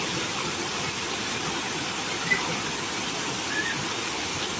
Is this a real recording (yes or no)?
no